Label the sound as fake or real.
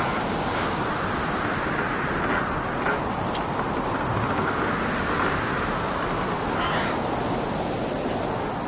real